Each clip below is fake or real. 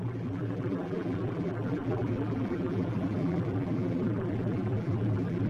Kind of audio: fake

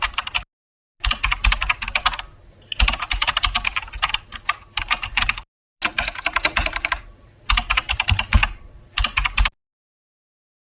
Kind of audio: real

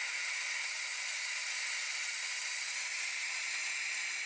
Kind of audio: real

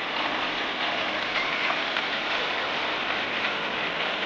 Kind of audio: real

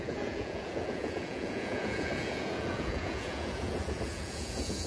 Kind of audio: fake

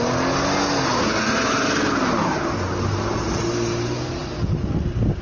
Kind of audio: real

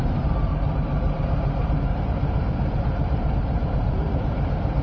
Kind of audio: fake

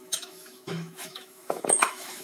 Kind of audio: fake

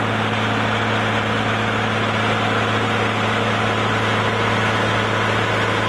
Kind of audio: real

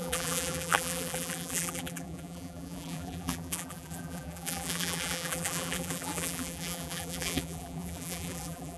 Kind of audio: fake